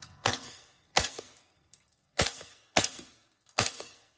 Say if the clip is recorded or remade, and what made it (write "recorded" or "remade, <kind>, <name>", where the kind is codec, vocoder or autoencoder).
remade, codec, SNAC